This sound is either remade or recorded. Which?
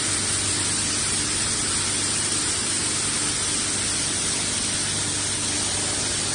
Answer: recorded